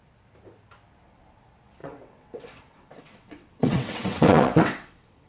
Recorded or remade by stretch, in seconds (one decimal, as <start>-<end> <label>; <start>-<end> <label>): 0.0-1.8 recorded; 1.8-5.3 remade